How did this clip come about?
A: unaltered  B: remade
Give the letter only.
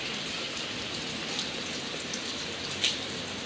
A